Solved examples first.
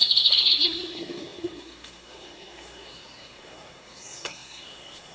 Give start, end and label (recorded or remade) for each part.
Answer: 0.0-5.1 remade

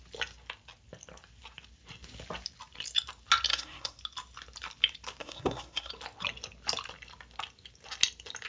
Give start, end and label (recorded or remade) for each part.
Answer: 0.0-3.5 recorded; 3.5-4.0 remade; 4.0-5.2 recorded; 5.2-5.9 remade; 5.9-8.5 recorded

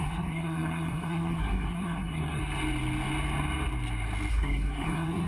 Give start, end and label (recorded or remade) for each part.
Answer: 0.0-2.4 remade; 2.4-4.3 recorded; 4.3-5.3 remade